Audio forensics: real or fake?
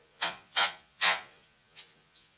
fake